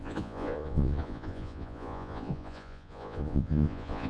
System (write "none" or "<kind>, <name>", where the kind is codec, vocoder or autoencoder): vocoder, Vocos